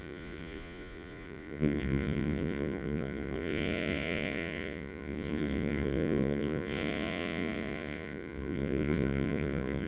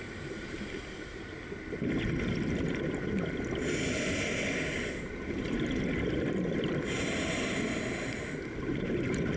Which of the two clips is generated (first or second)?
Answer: first